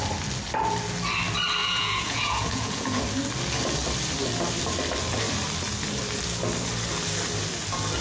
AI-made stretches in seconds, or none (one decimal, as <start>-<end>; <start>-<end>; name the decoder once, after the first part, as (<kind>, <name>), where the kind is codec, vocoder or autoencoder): 1.6-3.0 (vocoder, Vocos)